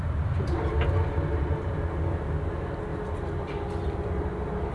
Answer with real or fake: real